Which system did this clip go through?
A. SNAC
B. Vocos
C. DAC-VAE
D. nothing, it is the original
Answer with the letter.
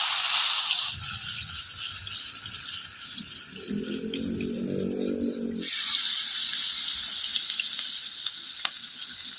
D